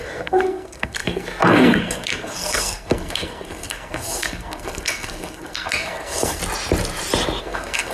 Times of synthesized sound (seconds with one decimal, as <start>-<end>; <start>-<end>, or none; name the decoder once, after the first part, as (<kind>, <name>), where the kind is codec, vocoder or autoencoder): 0.0-6.4 (codec, SNAC); 7.4-7.9

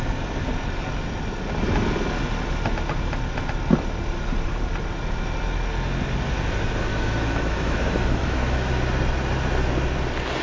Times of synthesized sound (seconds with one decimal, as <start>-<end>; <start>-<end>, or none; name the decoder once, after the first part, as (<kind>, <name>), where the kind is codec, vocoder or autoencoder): 6.9-8.7 (autoencoder, DAC-VAE)

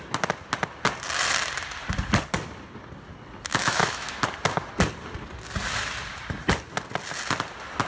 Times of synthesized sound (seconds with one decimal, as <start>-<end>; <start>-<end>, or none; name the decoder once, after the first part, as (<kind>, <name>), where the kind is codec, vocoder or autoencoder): 3.5-4.2 (autoencoder, DAC-VAE)

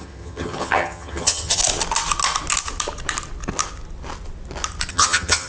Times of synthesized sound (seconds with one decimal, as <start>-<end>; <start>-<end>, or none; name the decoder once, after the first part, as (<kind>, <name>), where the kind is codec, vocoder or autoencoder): 0.0-1.6 (vocoder, HiFi-GAN); 4.9-5.5

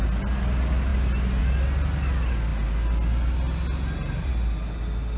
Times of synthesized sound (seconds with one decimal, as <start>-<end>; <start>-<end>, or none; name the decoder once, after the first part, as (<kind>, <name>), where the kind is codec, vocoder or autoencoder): none

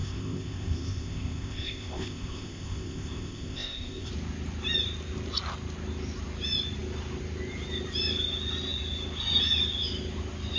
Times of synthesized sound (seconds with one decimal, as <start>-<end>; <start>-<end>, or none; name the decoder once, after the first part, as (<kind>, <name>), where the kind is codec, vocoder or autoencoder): 0.0-4.1 (codec, ZipCodec)

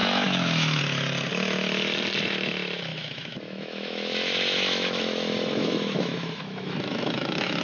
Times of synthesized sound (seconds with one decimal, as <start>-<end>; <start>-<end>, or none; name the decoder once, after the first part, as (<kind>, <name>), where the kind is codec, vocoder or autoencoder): 0.0-0.8 (autoencoder, DAC-VAE); 2.9-7.6

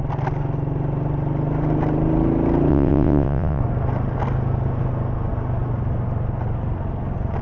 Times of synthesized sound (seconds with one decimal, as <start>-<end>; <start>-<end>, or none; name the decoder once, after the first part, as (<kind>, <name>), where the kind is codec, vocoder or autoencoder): 2.7-3.6 (vocoder, WaveNeXt)